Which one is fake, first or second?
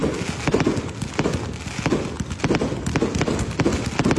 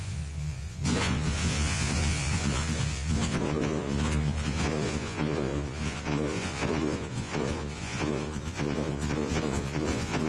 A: second